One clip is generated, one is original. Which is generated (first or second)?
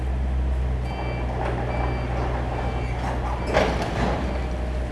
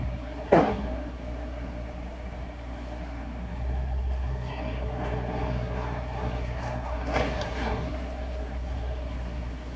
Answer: second